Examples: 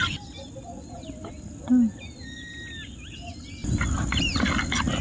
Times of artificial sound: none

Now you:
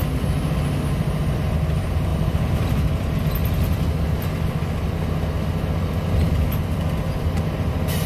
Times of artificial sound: 2.1-2.7

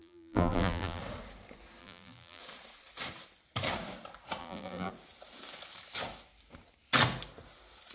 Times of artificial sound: 0.0-1.0; 1.8-2.4; 4.4-4.9

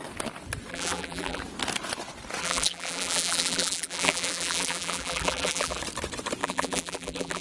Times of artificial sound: 0.7-1.4; 2.4-5.8; 6.4-7.4

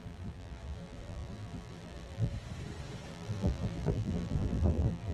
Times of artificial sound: 0.0-2.3; 3.1-5.1

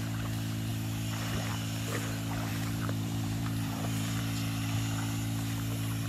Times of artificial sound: 2.5-4.2

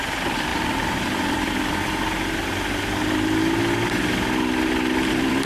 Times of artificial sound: 0.0-0.5; 1.0-1.8; 5.1-5.5

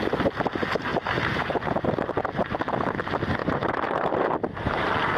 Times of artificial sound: 0.9-2.6; 3.4-4.1